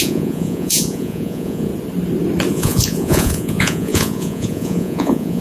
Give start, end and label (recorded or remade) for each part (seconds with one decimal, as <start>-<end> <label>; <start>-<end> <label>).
0.0-1.7 remade; 1.7-2.5 recorded; 2.5-5.4 remade